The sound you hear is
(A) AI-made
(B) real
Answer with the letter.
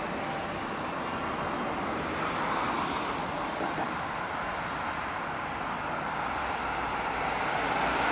B